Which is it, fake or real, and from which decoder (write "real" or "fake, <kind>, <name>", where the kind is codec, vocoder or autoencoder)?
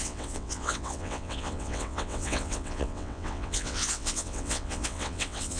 fake, vocoder, WaveNeXt